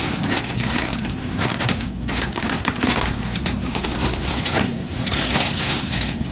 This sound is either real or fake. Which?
fake